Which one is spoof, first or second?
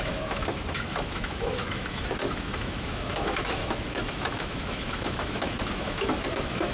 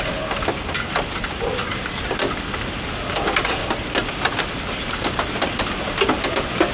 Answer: first